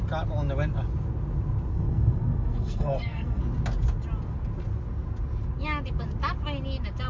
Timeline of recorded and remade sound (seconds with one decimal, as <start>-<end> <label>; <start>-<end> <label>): 0.0-1.7 recorded; 1.7-3.4 remade; 3.4-7.1 recorded